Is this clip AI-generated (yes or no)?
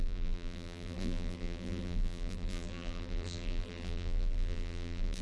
yes